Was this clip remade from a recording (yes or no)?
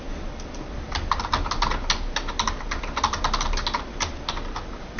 no